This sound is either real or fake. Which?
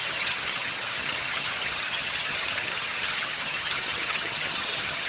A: fake